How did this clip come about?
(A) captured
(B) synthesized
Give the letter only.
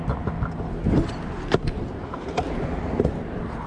A